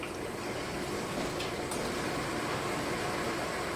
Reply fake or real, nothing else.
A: real